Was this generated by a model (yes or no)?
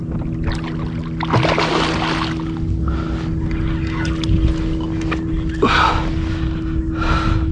no